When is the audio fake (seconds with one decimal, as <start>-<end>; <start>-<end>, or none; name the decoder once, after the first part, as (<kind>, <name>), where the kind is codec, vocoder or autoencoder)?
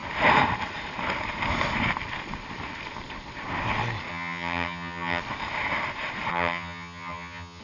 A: 4.1-5.2 (vocoder, HiFi-GAN); 6.3-7.6